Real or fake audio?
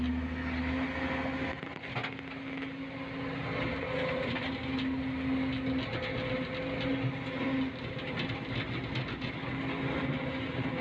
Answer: real